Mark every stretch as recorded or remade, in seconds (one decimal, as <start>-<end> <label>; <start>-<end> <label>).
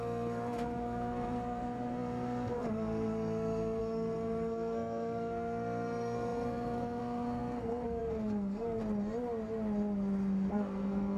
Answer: 0.0-8.8 remade; 8.8-10.5 recorded; 10.5-11.2 remade